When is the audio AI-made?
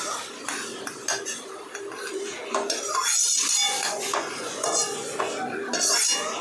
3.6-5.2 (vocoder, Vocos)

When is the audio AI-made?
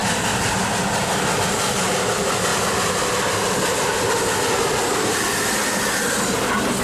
none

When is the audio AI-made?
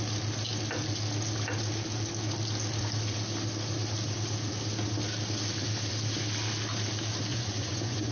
7.3-8.1 (vocoder, Vocos)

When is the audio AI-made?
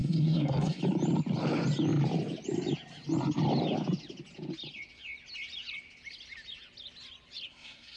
0.0-0.8 (codec, SNAC); 7.5-8.0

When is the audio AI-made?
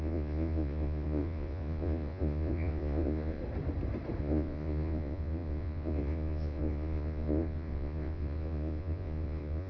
0.0-3.4 (vocoder, Vocos); 4.2-9.7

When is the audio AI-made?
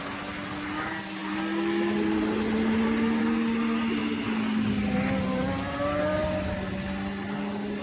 none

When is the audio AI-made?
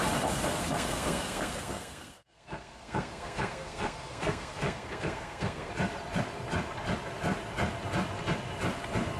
0.5-5.7 (codec, SNAC)